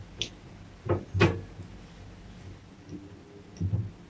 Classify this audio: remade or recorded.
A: recorded